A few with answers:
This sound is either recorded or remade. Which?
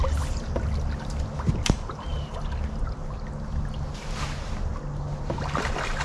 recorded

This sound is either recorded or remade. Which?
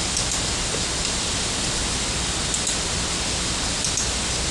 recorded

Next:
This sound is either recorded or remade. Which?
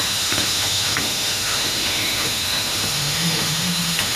remade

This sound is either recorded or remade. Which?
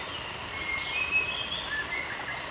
recorded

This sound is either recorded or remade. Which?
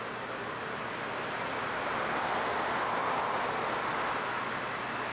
recorded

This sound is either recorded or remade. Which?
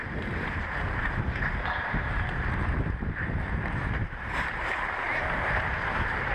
remade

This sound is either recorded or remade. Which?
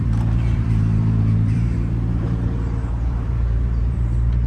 remade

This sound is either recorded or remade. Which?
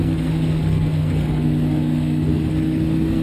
remade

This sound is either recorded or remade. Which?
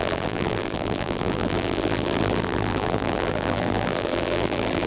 remade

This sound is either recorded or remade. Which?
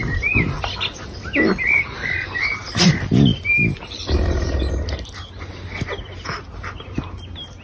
recorded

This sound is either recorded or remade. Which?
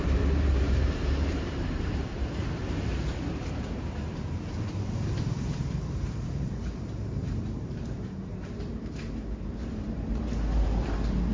remade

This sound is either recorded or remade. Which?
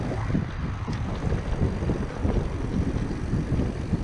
recorded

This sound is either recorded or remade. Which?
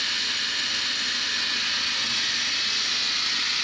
recorded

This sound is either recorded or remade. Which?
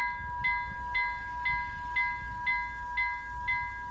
recorded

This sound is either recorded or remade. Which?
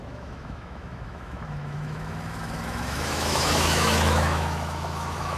remade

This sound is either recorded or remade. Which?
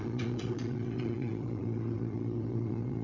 remade